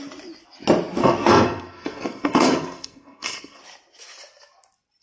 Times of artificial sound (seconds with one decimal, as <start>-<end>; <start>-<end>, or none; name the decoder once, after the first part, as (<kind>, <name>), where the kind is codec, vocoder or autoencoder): 1.0-3.6 (codec, SNAC)

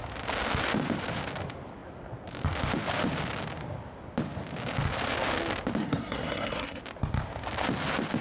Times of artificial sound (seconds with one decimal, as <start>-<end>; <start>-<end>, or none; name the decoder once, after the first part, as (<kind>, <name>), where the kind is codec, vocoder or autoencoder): 5.8-6.8 (codec, SNAC)

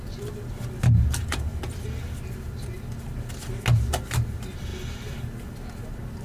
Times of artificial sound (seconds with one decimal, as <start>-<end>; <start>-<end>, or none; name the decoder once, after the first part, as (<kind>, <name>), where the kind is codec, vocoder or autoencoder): none

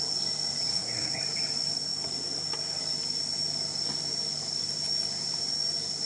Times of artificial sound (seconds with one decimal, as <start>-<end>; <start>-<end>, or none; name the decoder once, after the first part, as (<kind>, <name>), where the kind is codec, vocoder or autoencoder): 0.7-1.2 (codec, SNAC)

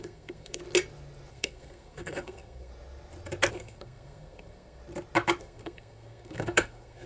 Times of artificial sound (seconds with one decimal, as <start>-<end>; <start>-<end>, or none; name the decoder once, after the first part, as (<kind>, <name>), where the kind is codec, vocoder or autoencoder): 0.0-0.6 (codec, SNAC); 1.3-2.7; 3.5-4.8; 5.4-7.1

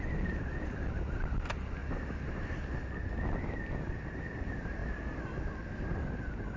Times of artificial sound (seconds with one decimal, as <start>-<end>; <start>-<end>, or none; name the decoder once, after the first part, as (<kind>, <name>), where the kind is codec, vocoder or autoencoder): none